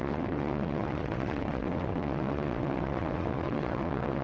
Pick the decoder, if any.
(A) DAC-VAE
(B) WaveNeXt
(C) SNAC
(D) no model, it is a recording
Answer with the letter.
B